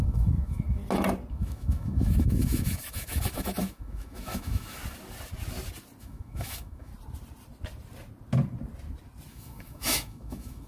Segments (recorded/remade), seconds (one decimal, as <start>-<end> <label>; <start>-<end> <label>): 0.0-0.8 remade; 0.8-1.3 recorded; 1.3-4.8 remade; 4.8-6.0 recorded; 6.0-6.9 remade; 6.9-9.3 recorded; 9.3-10.7 remade

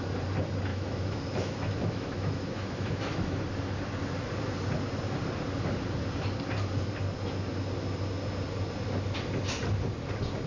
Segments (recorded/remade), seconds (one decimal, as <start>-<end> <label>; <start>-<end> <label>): 0.0-0.7 recorded; 0.7-3.4 remade; 3.4-10.5 recorded